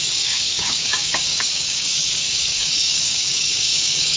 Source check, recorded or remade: remade